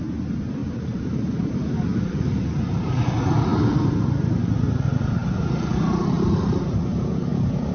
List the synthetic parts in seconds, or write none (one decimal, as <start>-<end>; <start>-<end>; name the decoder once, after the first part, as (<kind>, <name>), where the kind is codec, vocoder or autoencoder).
0.6-2.6 (vocoder, BigVGAN v2)